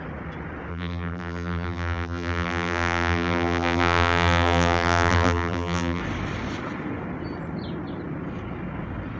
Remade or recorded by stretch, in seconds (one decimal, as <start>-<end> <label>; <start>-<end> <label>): 0.0-0.7 recorded; 0.7-6.0 remade; 6.0-9.2 recorded